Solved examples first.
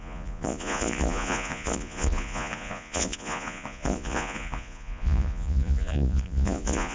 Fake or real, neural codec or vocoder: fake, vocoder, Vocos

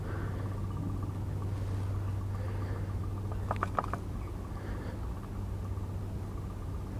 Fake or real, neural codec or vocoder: real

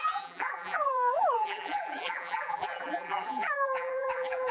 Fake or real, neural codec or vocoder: fake, vocoder, BigVGAN v2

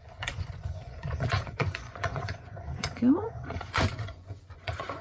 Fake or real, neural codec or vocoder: fake, vocoder, Vocos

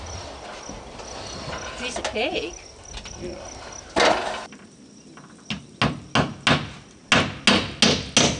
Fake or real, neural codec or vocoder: real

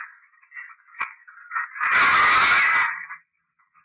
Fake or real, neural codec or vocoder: real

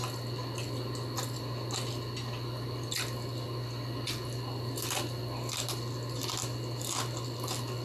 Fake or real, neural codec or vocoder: real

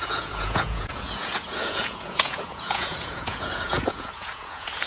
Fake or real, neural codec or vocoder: fake, vocoder, Vocos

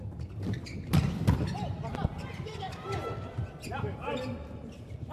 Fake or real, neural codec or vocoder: real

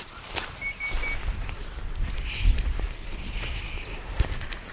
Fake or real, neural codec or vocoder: real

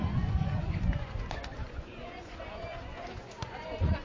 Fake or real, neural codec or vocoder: fake, vocoder, Vocos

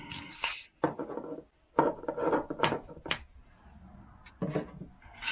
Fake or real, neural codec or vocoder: real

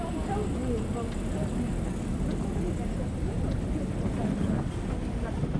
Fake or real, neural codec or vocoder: real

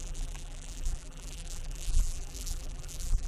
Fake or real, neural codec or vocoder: fake, vocoder, BigVGAN v2